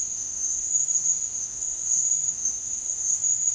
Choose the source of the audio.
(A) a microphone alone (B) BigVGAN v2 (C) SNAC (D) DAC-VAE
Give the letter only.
D